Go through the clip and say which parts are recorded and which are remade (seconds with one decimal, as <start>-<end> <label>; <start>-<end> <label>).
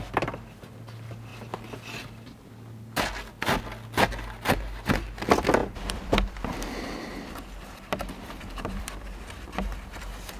0.0-5.6 recorded; 5.6-9.0 remade; 9.0-10.4 recorded